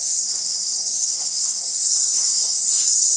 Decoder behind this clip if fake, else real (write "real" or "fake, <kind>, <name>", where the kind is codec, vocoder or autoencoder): fake, codec, SNAC